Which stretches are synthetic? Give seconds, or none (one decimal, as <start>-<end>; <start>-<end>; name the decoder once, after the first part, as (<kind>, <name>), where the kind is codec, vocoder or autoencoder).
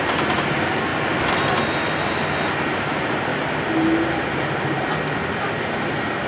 0.0-0.9 (vocoder, BigVGAN v2); 2.8-3.3